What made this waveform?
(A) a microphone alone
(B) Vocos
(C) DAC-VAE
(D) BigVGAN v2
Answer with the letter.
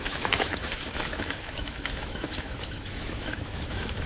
C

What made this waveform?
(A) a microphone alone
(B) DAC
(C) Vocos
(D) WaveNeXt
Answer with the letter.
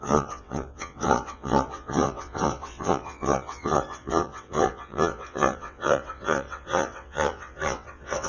D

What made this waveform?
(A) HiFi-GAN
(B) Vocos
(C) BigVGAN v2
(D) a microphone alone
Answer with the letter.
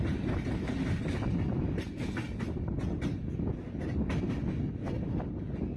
D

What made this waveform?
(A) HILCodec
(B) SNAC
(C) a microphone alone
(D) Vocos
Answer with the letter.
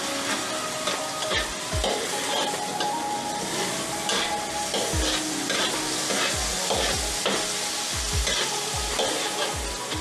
C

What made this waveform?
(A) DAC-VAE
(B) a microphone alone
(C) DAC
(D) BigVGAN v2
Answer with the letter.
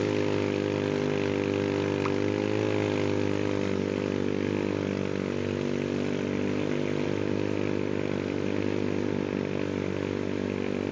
B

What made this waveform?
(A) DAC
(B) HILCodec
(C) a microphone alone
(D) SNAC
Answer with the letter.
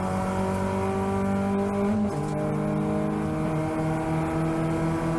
C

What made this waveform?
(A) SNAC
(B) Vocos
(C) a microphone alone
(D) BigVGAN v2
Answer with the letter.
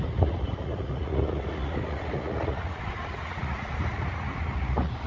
B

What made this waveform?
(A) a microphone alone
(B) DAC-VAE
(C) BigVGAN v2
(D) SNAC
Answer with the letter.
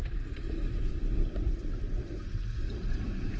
A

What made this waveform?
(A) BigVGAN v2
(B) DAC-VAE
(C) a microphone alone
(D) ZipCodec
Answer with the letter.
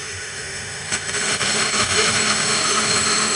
B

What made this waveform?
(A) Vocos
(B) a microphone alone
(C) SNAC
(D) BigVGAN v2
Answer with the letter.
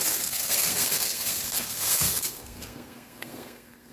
C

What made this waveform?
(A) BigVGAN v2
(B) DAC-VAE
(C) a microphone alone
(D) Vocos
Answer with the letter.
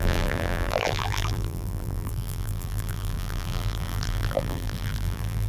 A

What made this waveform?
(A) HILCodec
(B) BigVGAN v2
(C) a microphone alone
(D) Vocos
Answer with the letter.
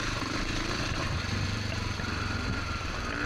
B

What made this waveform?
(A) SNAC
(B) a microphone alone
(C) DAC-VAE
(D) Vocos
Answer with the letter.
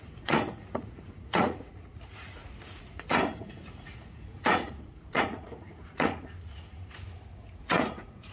D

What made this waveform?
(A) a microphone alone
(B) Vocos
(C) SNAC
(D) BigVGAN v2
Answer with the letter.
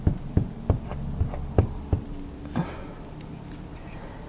D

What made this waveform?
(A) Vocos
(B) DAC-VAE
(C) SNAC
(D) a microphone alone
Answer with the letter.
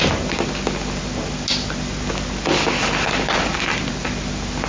D